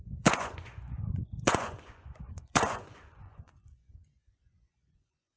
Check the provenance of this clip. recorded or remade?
remade